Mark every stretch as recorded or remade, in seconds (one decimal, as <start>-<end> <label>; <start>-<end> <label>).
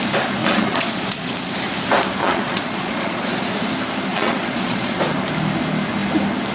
0.0-0.4 recorded; 0.4-1.3 remade; 1.3-2.2 recorded; 2.2-3.4 remade; 3.4-4.1 recorded; 4.1-5.0 remade; 5.0-6.5 recorded